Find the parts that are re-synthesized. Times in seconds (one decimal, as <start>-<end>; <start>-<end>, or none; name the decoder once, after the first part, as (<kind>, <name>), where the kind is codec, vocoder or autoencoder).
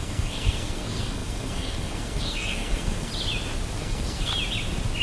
0.0-3.1 (codec, SNAC); 3.8-4.3